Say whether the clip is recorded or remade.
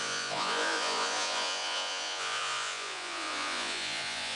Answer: remade